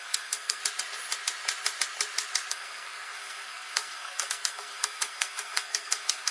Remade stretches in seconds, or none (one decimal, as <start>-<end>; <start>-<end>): 0.0-0.6; 2.5-6.3